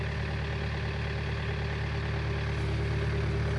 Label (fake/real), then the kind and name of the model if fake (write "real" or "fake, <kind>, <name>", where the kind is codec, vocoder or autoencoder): real